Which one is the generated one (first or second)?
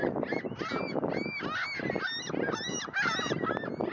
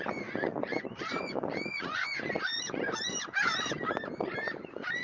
second